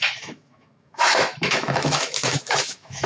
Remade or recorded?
remade